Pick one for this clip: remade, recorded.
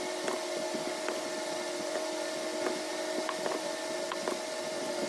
recorded